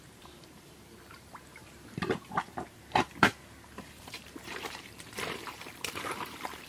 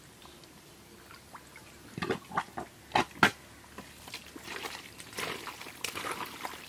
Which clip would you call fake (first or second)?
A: first